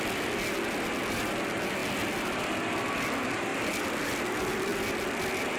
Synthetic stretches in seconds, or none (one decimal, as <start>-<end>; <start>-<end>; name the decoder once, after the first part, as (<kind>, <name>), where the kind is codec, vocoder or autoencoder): none